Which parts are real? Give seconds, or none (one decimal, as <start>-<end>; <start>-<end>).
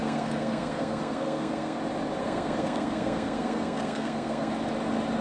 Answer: 1.8-2.2; 4.5-5.2